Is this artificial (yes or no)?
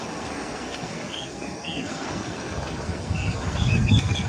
yes